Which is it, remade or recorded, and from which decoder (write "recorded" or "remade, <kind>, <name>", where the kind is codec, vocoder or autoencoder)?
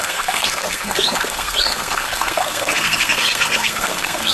remade, codec, SNAC